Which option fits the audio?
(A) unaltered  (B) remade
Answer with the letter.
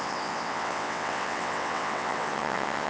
B